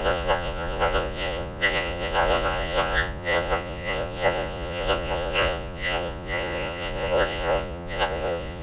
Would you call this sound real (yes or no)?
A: no